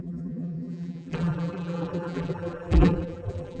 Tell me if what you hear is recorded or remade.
remade